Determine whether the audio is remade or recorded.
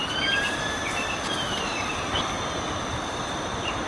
remade